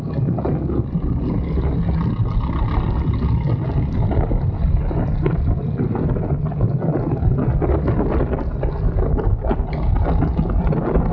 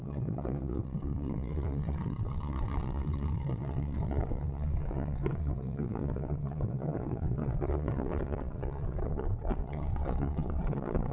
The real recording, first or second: first